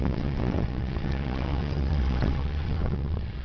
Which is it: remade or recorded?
remade